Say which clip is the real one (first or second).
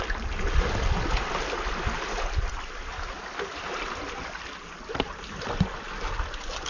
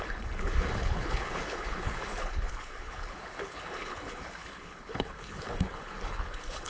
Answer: first